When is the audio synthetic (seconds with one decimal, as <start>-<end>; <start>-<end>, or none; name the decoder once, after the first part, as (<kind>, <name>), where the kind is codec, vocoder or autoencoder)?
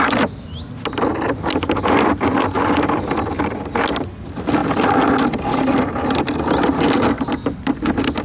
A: none